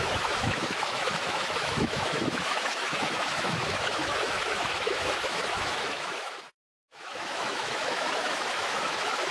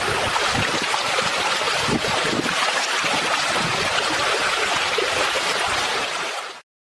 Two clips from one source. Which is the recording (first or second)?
second